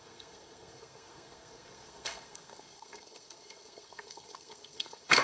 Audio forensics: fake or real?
fake